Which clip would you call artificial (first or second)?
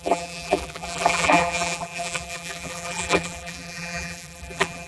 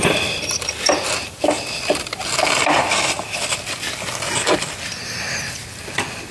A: first